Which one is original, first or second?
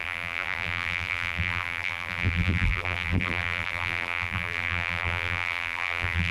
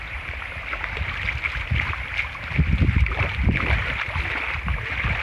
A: second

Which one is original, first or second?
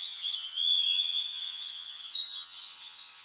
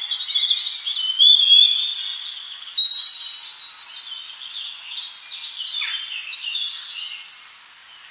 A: second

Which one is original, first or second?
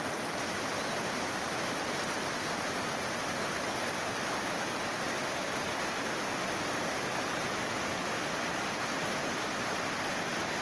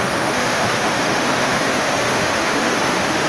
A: first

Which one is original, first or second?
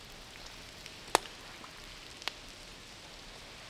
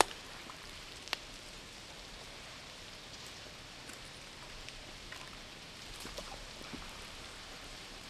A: first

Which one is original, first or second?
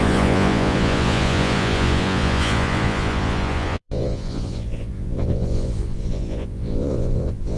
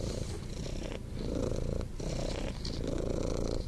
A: second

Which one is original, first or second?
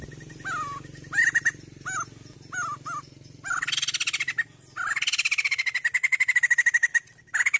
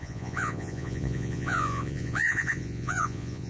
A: first